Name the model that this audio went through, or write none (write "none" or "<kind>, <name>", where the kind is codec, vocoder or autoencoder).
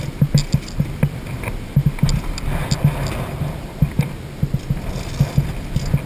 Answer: none